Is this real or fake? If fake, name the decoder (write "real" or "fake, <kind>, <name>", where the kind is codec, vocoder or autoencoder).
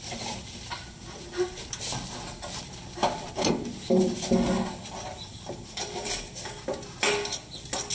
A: real